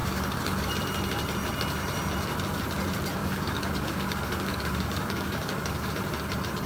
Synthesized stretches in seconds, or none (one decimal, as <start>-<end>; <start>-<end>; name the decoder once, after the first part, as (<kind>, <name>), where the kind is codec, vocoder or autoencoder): 0.0-0.7 (codec, DAC); 3.2-5.9